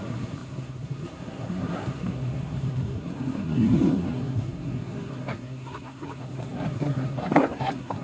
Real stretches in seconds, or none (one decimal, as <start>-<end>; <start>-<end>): none